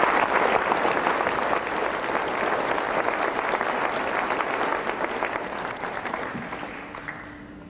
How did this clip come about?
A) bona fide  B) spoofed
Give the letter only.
A